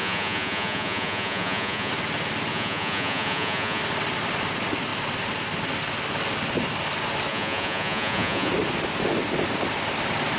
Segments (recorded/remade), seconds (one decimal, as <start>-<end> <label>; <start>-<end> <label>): 0.0-1.9 remade; 1.9-2.5 recorded; 2.5-3.8 remade; 3.8-7.3 recorded; 7.3-8.5 remade; 8.5-10.4 recorded